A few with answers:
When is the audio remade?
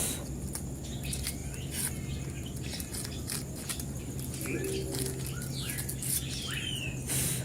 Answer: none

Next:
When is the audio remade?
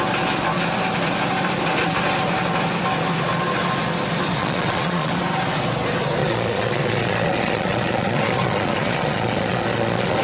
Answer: 4.4-5.1 (vocoder, Vocos); 6.2-10.2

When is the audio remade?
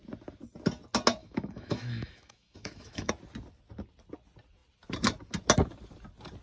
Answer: 1.2-3.1 (autoencoder, DAC-VAE)